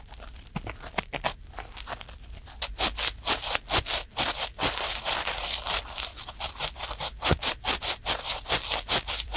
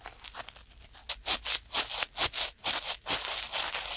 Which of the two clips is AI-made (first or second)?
first